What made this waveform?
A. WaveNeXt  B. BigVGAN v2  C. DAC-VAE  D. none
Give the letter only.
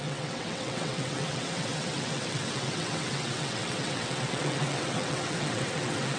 A